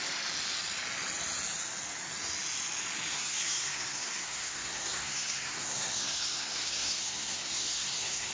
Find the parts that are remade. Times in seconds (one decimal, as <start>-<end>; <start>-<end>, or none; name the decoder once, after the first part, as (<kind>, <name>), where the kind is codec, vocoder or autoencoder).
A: 3.1-8.3 (codec, SNAC)